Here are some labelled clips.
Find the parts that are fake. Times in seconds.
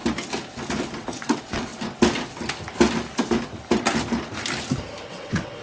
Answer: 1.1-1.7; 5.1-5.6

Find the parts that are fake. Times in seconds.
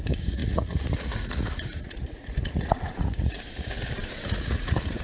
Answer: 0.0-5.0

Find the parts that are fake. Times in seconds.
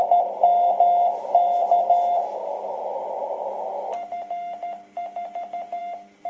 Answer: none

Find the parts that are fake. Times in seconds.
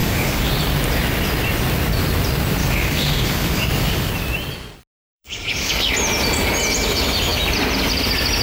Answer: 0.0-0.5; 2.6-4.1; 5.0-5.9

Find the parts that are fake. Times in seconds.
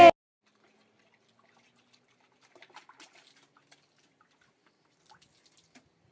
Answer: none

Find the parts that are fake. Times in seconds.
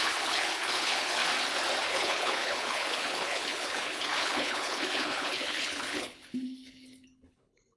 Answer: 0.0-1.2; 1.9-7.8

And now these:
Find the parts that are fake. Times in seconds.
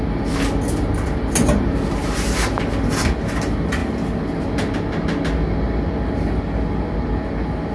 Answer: 2.0-2.6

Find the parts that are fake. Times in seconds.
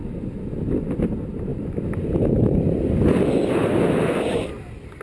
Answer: 1.5-4.5